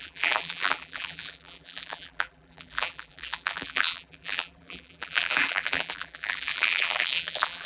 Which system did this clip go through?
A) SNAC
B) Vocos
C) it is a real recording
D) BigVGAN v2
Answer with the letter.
D